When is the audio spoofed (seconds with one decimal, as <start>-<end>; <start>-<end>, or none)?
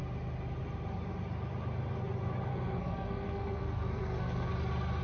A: 2.5-4.5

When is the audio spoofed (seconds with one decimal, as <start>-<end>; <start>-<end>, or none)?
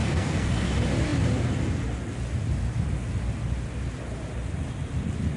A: 0.0-0.7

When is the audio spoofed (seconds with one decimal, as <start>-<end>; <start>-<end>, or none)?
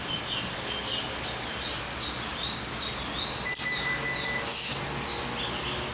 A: none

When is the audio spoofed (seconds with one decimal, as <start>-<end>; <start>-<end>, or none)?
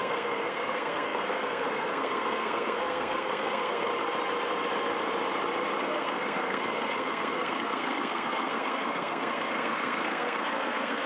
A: 0.0-3.9; 5.8-11.1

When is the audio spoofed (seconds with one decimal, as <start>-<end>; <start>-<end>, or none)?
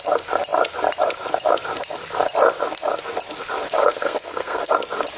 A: 3.8-4.7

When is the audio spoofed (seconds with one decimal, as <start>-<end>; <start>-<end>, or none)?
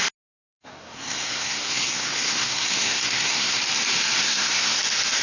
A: 0.5-3.6; 4.2-4.8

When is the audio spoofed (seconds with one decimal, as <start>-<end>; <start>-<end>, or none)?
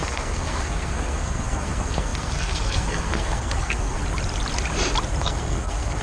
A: 0.0-4.0; 5.2-6.0